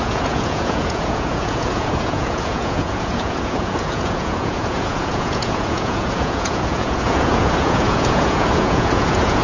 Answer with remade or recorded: remade